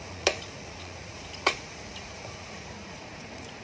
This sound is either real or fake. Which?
fake